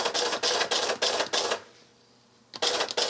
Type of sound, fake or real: real